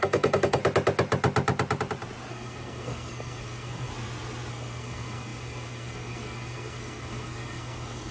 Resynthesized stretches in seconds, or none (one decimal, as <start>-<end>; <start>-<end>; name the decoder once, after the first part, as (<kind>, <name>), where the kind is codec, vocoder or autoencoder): 0.0-0.6 (codec, SNAC); 2.3-3.9; 4.5-8.1